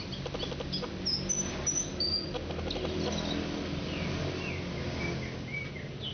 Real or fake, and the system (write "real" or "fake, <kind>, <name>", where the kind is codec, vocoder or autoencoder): real